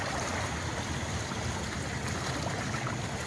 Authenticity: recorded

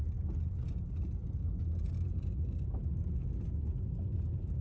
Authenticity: recorded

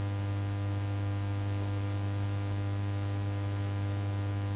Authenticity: recorded